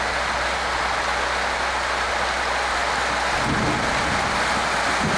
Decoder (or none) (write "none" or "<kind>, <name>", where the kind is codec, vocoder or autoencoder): none